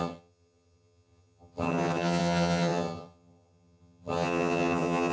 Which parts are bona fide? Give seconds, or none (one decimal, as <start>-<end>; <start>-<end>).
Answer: none